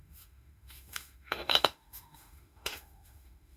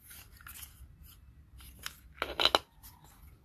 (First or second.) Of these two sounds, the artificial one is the first